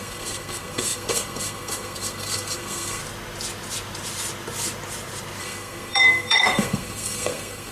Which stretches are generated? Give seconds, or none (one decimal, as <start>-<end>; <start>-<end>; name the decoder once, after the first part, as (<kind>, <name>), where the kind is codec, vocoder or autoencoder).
0.0-3.0 (codec, SNAC); 5.4-7.7